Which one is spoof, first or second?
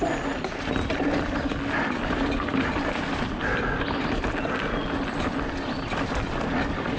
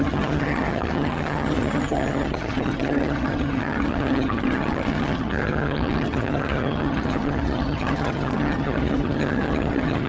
second